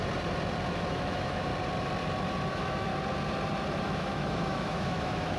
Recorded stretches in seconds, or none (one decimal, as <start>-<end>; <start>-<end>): 0.0-0.9; 1.5-2.5; 2.9-3.8

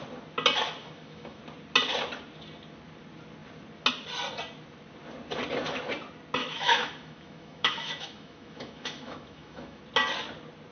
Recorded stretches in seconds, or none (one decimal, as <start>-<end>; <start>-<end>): 0.0-0.8; 1.4-6.4; 9.8-10.7

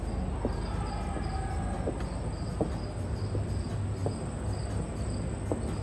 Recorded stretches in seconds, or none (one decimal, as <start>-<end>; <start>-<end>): 0.0-5.8